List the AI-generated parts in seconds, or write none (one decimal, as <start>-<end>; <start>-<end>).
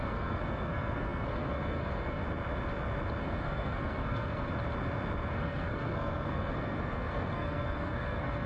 0.0-2.2; 3.2-4.5; 5.3-8.5